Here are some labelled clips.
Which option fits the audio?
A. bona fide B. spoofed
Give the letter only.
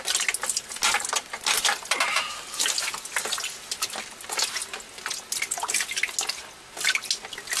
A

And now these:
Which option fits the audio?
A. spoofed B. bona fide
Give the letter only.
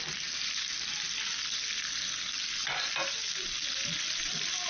B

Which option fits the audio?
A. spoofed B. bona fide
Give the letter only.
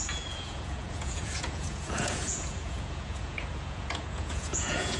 A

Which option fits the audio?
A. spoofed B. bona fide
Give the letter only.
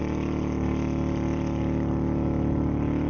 B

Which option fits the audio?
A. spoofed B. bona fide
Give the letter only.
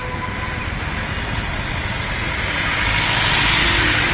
B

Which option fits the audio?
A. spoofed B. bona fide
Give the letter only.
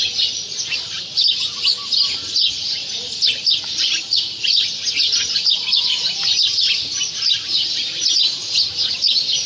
B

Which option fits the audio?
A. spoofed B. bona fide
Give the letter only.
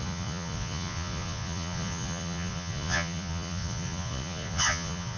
A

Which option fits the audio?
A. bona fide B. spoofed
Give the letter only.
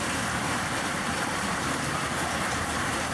A